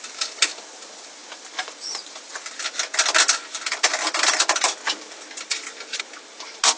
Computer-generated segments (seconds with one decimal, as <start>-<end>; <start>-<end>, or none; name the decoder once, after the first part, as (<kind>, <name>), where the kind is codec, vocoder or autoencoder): none